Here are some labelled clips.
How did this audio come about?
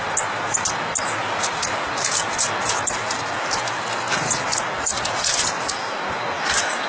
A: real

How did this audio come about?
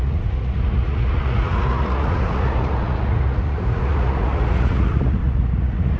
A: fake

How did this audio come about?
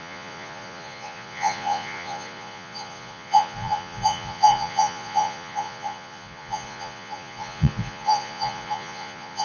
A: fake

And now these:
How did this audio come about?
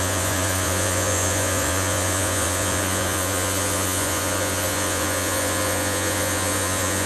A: fake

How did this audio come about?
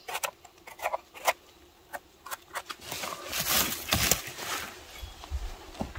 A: real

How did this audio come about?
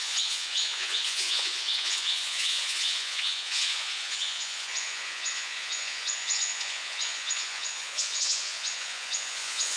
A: fake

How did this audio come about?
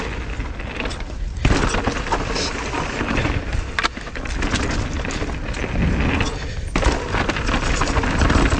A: real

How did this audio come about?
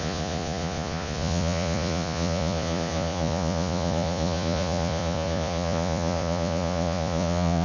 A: fake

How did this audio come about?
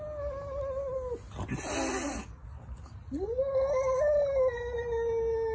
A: real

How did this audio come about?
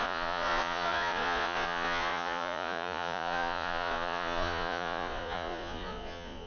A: fake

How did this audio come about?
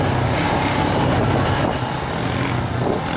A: real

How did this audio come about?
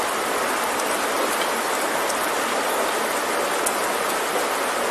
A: real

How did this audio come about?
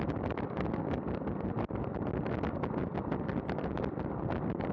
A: real